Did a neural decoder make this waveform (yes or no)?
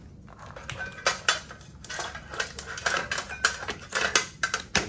no